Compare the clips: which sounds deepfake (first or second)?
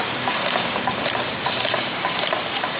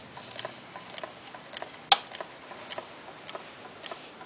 first